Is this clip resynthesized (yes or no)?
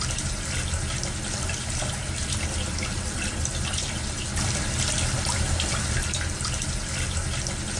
no